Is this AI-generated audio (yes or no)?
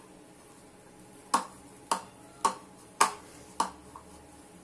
no